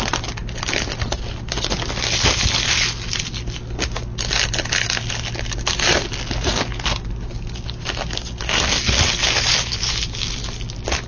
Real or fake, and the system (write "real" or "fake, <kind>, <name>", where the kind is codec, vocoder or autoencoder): real